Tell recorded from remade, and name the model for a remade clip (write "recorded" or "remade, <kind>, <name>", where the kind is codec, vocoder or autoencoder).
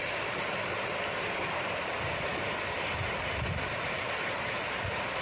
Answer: recorded